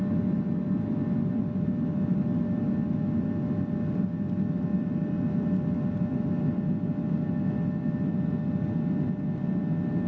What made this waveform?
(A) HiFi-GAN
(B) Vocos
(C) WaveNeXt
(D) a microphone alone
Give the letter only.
D